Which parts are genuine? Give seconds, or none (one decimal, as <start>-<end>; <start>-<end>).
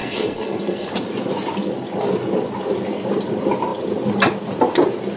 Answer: 0.9-5.2